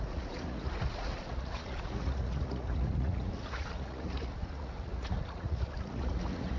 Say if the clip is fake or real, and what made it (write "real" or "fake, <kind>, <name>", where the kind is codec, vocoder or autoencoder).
fake, vocoder, Vocos